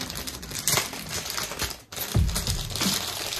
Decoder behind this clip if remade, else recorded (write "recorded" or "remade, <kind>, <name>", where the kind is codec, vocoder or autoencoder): remade, vocoder, BigVGAN v2